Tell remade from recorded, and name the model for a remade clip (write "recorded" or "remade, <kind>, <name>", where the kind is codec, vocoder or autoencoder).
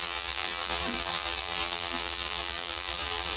remade, vocoder, BigVGAN v2